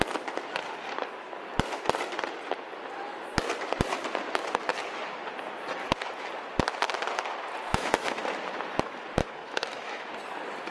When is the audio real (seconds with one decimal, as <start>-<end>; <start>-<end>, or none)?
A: 0.0-7.7; 8.2-9.2; 10.1-10.7